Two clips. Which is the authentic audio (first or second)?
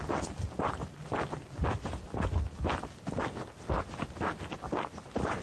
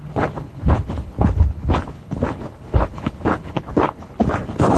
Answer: first